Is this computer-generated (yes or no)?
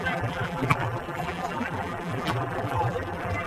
yes